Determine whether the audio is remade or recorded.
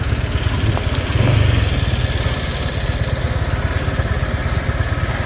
recorded